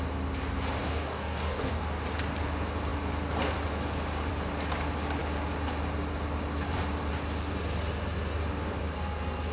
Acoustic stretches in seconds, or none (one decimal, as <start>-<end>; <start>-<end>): 0.0-0.8; 1.8-9.5